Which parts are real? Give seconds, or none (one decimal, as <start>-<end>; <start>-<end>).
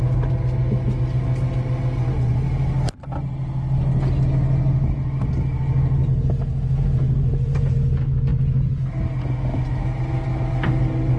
0.0-6.0; 7.7-11.2